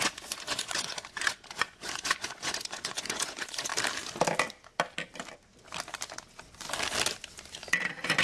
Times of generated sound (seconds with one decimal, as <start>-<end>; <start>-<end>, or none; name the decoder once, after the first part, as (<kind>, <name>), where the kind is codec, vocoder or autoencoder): 0.0-3.7 (vocoder, Vocos)